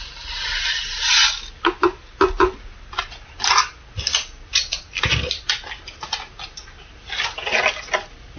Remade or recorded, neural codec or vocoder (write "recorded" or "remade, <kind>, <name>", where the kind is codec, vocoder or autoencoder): recorded